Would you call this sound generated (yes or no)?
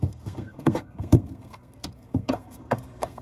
yes